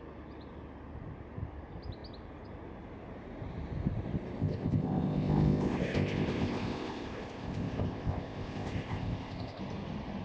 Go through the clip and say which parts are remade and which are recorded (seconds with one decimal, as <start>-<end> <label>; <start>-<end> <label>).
0.0-4.4 recorded; 4.4-9.6 remade; 9.6-10.2 recorded